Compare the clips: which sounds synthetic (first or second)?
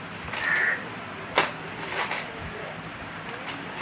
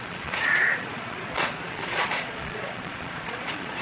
second